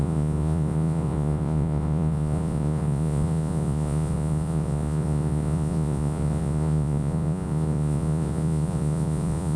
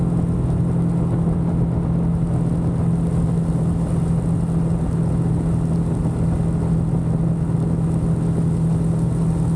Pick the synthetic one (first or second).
first